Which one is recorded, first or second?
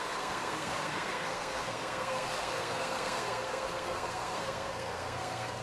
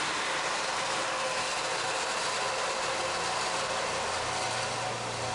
second